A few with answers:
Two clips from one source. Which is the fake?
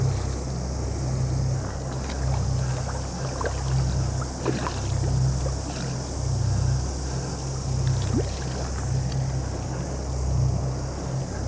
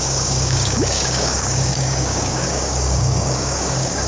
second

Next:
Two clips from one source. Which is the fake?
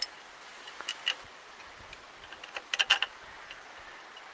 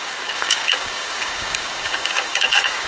second